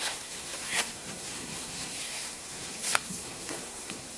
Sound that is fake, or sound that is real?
fake